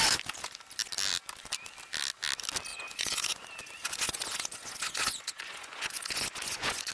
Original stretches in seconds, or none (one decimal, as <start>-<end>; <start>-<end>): 0.0-2.7